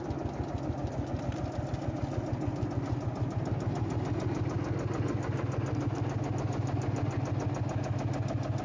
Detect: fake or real real